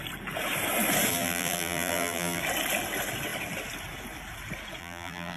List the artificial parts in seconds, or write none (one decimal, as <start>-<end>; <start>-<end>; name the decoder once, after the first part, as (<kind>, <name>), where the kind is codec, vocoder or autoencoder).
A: 1.1-2.4 (vocoder, BigVGAN v2); 4.8-5.4